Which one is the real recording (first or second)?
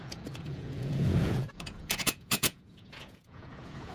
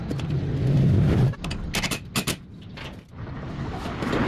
second